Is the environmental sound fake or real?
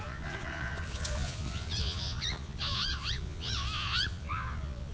fake